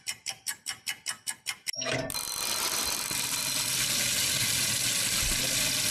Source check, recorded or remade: recorded